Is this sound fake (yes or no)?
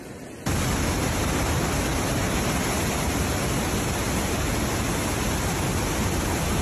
no